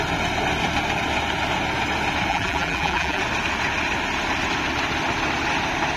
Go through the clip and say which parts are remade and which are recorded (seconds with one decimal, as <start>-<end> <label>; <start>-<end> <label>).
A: 0.0-2.3 recorded; 2.3-3.2 remade; 3.2-6.0 recorded

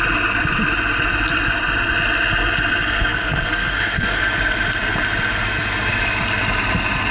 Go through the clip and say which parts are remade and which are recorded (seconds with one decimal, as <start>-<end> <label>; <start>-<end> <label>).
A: 0.0-3.1 recorded; 3.1-4.2 remade; 4.2-7.1 recorded

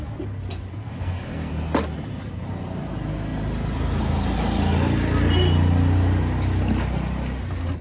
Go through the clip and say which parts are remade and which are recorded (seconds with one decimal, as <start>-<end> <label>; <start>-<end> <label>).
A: 0.0-0.7 recorded; 0.7-1.5 remade; 1.5-7.8 recorded

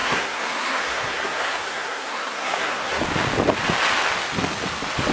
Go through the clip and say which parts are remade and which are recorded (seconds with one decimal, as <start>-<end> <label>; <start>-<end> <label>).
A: 0.0-3.0 remade; 3.0-5.1 recorded